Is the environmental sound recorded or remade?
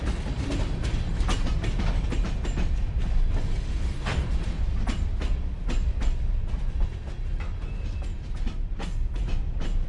recorded